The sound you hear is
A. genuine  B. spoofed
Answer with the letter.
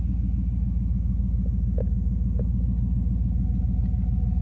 A